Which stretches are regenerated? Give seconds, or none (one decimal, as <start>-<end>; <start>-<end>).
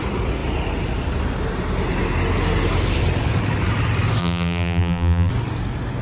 4.2-5.3